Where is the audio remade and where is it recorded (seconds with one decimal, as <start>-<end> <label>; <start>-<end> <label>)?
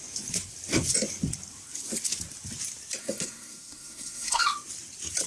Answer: 0.0-3.0 recorded; 3.0-4.4 remade; 4.4-5.3 recorded